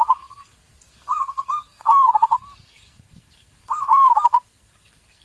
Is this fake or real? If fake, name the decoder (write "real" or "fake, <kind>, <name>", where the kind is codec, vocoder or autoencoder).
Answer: fake, codec, SNAC